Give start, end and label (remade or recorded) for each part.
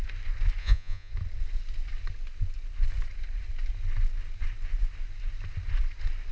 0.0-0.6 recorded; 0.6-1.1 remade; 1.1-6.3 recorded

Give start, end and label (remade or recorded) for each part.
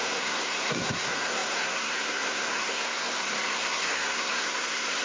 0.0-5.0 remade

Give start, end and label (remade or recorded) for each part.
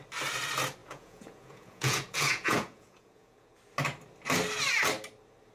0.0-0.8 recorded; 0.8-3.6 remade; 3.6-5.5 recorded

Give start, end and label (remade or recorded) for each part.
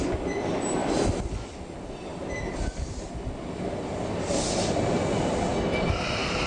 0.0-6.5 recorded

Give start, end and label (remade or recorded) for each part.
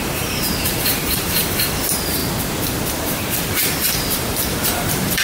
0.0-2.2 remade; 2.2-3.0 recorded; 3.0-5.2 remade